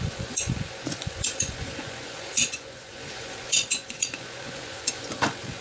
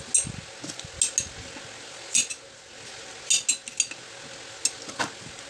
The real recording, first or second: second